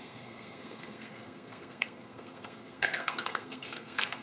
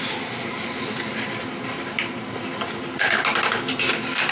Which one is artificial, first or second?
first